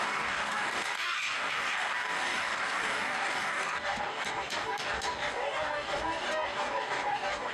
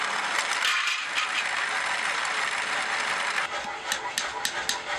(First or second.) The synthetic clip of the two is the first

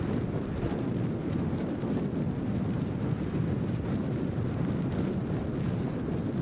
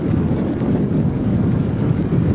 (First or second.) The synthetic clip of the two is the second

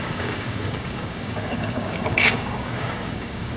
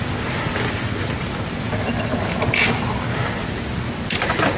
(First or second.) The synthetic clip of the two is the first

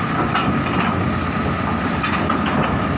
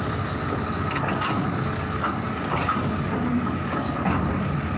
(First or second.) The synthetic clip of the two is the second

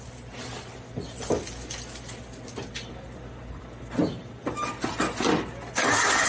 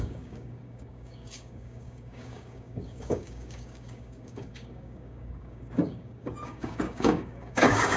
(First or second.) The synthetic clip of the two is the second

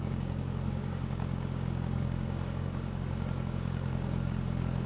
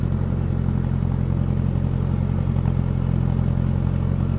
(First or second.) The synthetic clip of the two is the first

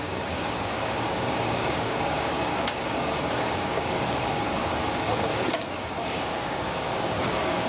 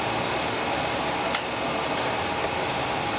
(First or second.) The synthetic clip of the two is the first